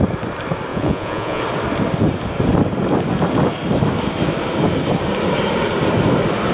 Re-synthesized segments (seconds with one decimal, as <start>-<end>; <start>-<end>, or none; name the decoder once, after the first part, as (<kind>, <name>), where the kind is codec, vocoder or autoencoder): 0.7-1.4 (vocoder, Vocos)